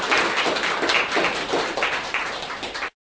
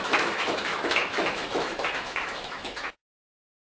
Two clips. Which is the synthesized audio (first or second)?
second